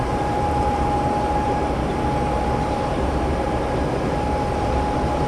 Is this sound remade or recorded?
remade